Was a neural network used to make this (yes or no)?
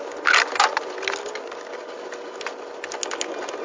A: no